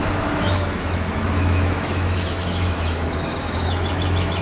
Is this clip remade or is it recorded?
remade